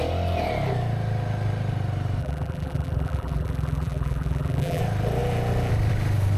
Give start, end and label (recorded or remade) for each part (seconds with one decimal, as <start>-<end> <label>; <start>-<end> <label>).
0.0-2.2 recorded; 2.2-4.8 remade; 4.8-6.4 recorded